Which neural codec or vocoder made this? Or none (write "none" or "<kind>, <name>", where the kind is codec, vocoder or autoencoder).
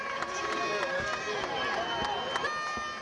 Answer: none